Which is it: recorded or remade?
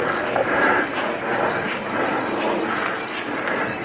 recorded